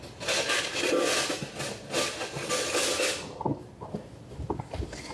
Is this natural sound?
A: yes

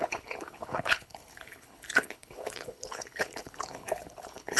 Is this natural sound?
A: no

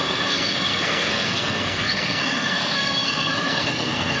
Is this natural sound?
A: no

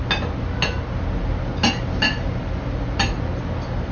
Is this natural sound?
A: yes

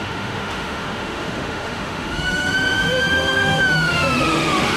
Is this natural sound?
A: no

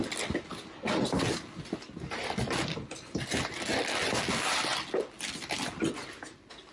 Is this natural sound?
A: yes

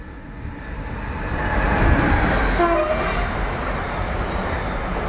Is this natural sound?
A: yes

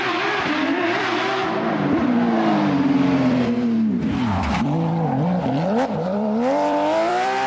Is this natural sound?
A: no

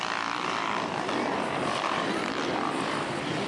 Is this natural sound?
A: yes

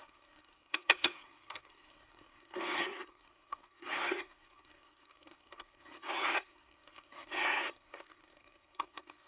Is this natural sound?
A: no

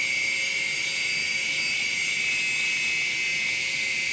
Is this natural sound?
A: yes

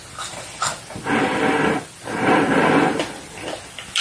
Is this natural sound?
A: yes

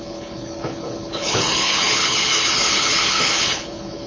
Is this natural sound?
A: no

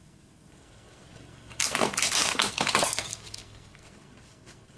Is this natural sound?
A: no